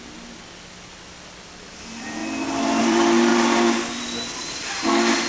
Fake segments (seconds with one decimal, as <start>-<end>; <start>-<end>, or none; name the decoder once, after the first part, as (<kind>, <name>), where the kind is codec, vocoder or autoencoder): 0.0-2.2 (vocoder, BigVGAN v2); 2.8-5.3